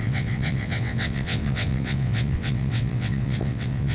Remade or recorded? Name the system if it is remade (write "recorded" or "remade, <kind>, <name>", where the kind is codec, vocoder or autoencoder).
remade, vocoder, WaveNeXt